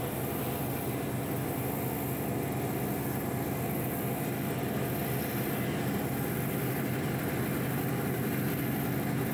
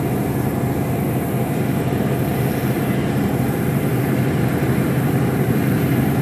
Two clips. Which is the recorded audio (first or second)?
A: first